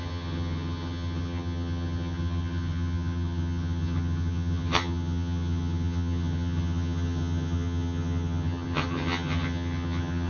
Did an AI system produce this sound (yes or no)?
yes